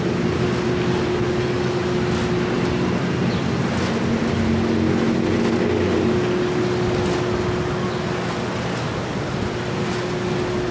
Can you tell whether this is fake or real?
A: real